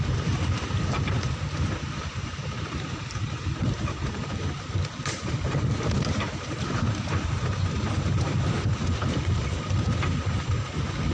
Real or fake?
fake